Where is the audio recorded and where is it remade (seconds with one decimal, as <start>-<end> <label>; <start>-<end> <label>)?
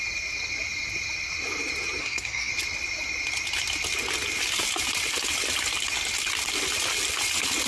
0.0-2.0 recorded; 2.0-2.5 remade; 2.5-7.7 recorded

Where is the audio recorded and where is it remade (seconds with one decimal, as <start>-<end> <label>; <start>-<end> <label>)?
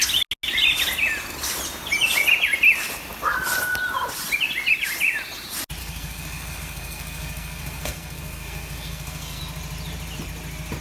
0.0-5.8 recorded; 5.8-9.4 remade; 9.4-10.8 recorded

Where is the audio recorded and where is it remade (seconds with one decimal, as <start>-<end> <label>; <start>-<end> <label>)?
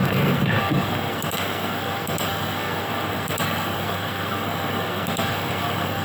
0.0-6.0 remade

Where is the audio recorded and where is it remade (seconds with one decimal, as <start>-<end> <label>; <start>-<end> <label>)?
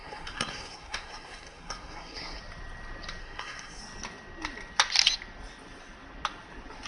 0.0-2.4 remade; 2.4-3.2 recorded; 3.2-3.8 remade; 3.8-6.9 recorded